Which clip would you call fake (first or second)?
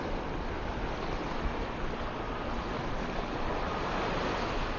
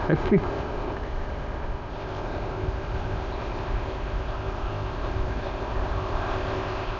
second